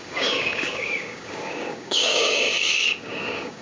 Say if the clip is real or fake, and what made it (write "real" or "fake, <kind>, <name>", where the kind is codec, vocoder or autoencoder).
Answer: fake, codec, DAC